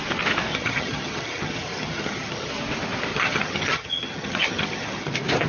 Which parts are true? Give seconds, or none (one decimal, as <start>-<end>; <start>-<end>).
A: 0.0-0.5; 2.5-3.1; 5.1-5.5